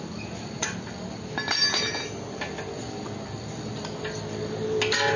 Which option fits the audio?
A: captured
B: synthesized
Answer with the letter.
A